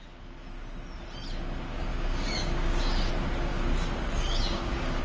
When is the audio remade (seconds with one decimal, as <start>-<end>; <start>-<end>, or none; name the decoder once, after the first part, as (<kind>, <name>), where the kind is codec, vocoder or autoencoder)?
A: 1.9-3.1 (codec, DAC); 3.5-5.0